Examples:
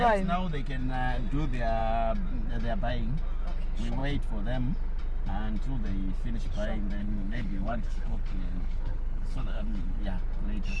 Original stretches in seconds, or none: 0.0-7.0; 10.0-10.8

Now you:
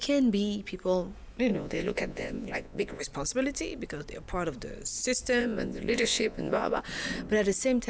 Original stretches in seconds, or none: 0.0-1.5; 3.0-5.4; 6.8-7.9

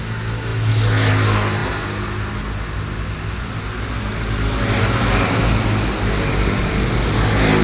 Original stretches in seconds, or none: 0.0-7.6

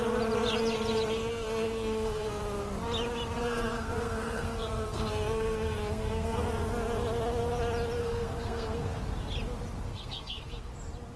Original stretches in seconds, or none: 0.0-1.3; 2.4-3.4; 6.4-8.0; 9.0-9.9; 10.7-11.2

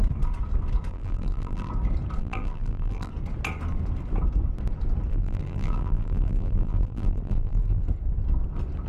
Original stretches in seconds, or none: 0.0-0.9; 1.7-2.2; 3.1-5.1; 7.8-8.9